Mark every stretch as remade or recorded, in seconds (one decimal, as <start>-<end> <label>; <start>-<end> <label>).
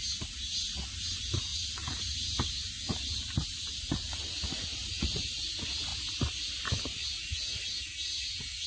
0.0-1.5 recorded; 1.5-5.4 remade; 5.4-8.7 recorded